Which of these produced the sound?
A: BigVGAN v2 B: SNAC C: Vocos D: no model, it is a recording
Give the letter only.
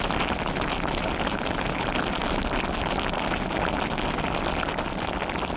D